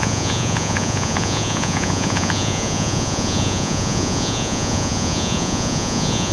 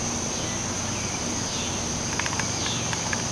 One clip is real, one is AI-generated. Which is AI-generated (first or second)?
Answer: first